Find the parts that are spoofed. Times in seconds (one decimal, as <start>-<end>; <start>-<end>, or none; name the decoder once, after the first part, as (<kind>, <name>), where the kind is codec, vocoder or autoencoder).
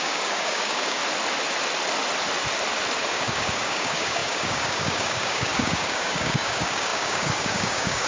0.0-1.0 (codec, DAC); 3.1-8.1